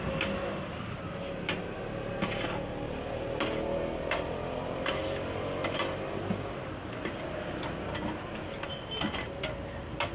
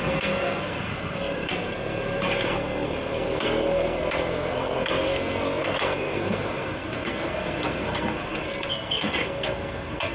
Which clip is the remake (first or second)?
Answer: second